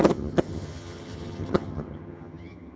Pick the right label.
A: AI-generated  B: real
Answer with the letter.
A